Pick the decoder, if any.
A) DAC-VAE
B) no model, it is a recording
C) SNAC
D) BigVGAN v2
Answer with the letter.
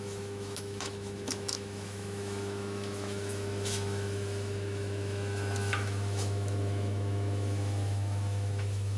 A